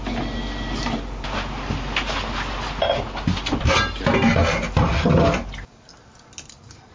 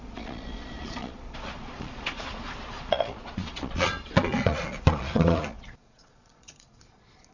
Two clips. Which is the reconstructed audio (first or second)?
second